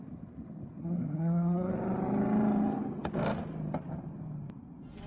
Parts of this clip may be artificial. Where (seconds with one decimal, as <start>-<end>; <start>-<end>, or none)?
0.8-1.7